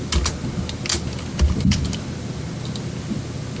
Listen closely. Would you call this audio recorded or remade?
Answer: recorded